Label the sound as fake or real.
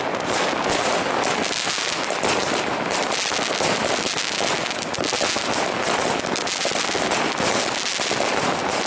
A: real